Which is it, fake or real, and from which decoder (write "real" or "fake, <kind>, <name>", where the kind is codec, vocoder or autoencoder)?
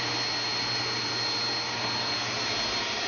real